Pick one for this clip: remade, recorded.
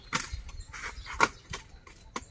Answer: recorded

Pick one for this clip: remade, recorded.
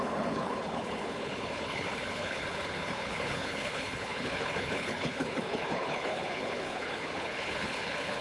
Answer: remade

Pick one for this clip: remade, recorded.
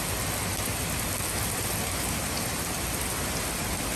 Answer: recorded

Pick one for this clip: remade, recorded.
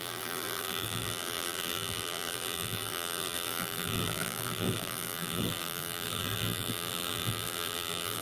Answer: remade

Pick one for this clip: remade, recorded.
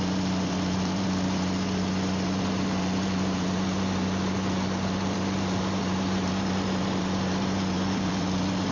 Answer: remade